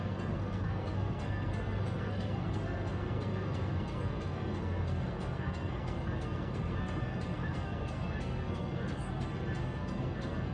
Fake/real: fake